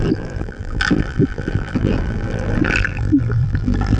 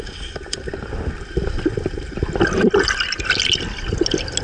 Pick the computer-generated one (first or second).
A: first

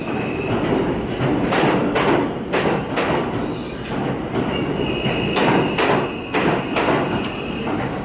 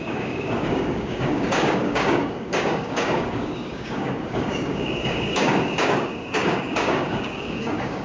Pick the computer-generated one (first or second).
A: second